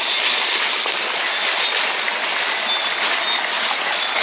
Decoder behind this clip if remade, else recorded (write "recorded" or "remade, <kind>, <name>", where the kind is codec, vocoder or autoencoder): recorded